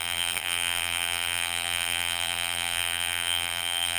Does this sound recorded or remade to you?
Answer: remade